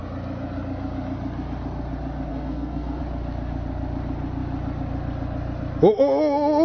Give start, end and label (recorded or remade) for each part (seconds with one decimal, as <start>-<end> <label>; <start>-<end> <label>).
0.0-2.3 recorded; 2.3-3.0 remade; 3.0-6.6 recorded